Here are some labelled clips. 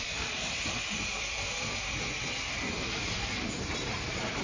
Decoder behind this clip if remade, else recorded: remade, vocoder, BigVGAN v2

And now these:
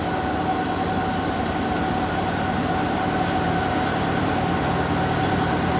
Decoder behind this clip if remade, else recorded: recorded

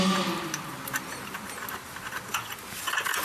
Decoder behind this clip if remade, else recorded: recorded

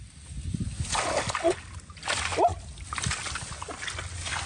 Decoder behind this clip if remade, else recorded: recorded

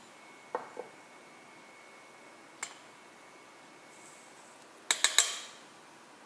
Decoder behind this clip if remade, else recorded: recorded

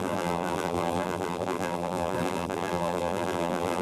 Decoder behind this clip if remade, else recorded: remade, vocoder, BigVGAN v2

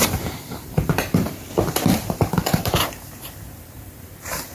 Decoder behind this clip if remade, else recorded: remade, vocoder, BigVGAN v2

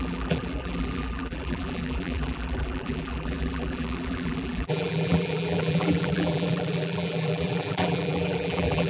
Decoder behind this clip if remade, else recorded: remade, vocoder, BigVGAN v2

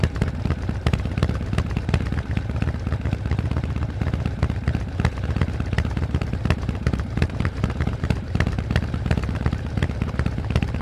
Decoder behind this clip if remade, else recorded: remade, vocoder, BigVGAN v2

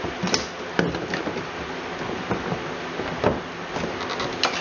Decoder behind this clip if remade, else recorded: recorded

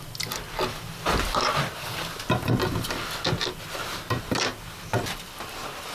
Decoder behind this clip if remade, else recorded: recorded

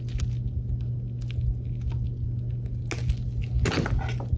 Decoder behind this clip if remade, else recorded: recorded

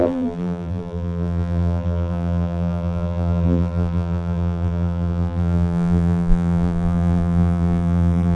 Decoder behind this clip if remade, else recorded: remade, vocoder, BigVGAN v2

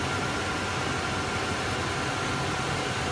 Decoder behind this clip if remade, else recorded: recorded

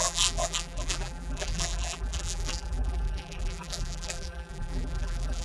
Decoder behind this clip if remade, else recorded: remade, vocoder, BigVGAN v2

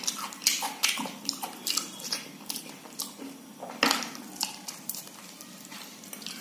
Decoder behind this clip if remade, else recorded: remade, vocoder, BigVGAN v2